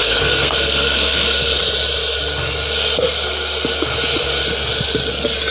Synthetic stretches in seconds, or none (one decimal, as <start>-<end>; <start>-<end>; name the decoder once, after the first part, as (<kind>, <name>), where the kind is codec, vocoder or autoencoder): 0.0-1.6 (codec, SNAC)